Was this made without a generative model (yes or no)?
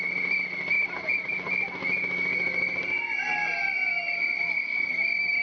yes